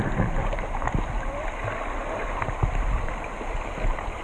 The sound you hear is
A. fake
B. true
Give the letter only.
B